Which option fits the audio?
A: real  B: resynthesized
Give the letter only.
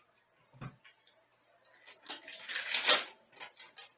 A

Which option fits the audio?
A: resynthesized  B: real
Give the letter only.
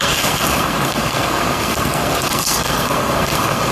A